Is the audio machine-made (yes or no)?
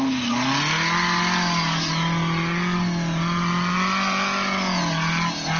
no